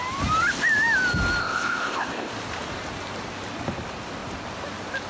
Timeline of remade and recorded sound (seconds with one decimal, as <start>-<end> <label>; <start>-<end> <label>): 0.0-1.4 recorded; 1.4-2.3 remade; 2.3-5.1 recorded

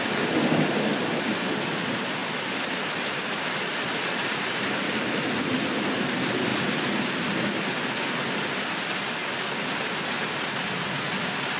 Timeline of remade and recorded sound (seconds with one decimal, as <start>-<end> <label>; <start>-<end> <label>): 0.0-11.6 recorded

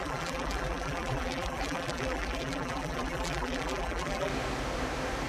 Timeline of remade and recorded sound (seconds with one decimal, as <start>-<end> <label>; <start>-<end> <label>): 0.0-4.3 remade; 4.3-5.3 recorded

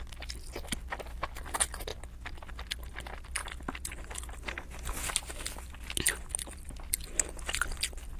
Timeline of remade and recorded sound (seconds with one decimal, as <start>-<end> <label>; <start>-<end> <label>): 0.0-8.2 recorded

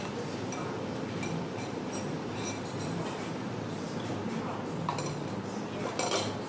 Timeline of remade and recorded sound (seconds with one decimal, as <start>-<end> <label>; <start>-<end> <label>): 0.0-0.6 recorded; 0.6-3.5 remade; 3.5-6.5 recorded

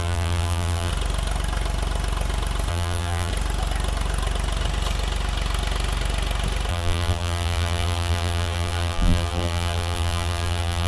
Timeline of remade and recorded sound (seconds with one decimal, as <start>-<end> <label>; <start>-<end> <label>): 0.0-0.9 remade; 0.9-2.7 recorded; 2.7-3.3 remade; 3.3-6.7 recorded; 6.7-10.9 remade

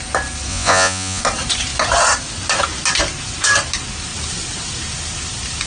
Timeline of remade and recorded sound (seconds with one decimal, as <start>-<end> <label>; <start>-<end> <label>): 0.0-0.5 recorded; 0.5-1.2 remade; 1.2-5.7 recorded